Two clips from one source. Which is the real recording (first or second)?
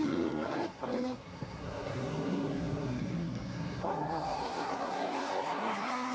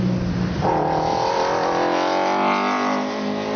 second